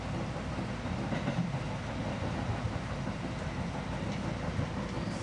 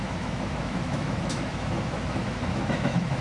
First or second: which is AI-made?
second